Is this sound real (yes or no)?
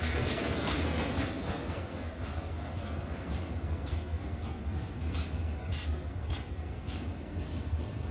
no